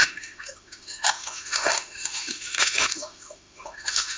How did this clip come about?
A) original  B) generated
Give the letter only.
B